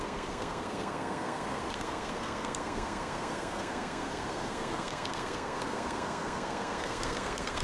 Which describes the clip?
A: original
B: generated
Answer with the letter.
B